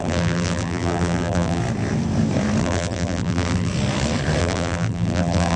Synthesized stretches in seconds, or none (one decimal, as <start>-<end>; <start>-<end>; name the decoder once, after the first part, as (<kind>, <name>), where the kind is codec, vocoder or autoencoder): 0.0-1.6 (vocoder, BigVGAN v2); 2.6-3.7; 4.4-5.6